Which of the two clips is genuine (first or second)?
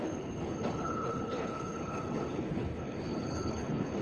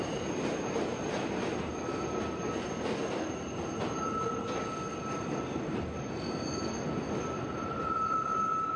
second